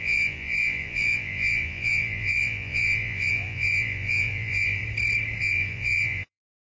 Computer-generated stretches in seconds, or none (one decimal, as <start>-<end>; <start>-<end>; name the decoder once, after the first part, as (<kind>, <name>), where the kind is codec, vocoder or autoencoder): 0.0-4.8 (vocoder, Vocos); 5.4-6.7